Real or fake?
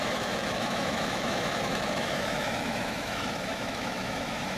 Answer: fake